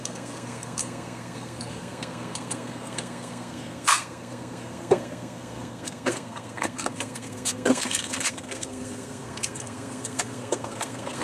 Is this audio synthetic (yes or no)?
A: yes